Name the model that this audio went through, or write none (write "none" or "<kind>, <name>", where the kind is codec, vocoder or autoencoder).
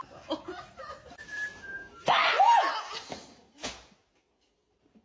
none